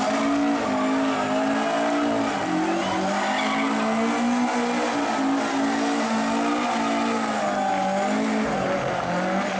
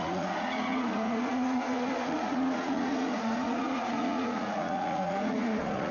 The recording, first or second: first